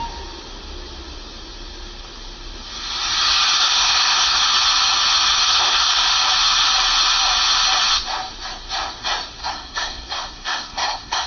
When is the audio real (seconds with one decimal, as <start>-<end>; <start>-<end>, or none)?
0.0-3.6; 4.4-5.4; 6.1-9.4